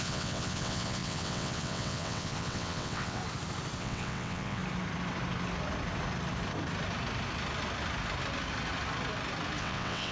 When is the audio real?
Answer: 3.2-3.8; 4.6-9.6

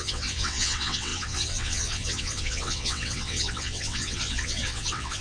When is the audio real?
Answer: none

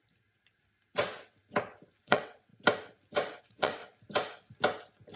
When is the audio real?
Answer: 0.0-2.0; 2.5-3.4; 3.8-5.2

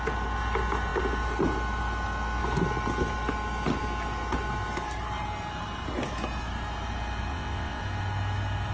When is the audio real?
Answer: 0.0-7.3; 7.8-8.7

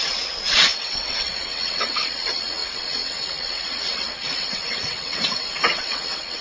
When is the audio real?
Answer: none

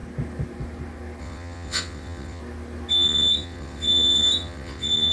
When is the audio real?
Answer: 0.0-1.2; 2.4-2.9

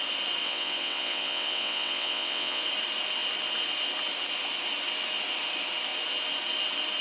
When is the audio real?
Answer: 0.0-0.4; 2.6-7.0

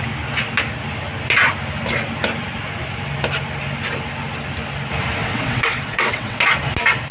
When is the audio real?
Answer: 0.0-5.2; 6.4-7.1